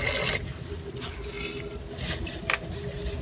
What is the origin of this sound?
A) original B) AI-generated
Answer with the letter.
A